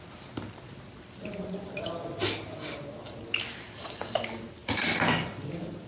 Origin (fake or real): real